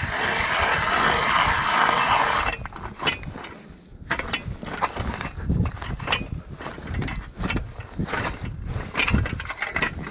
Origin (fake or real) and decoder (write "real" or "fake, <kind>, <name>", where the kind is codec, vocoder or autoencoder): real